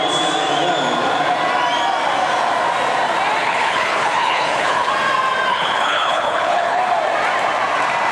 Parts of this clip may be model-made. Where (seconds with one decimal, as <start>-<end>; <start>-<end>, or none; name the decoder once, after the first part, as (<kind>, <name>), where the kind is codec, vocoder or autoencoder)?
3.4-4.9 (codec, HILCodec); 5.5-6.8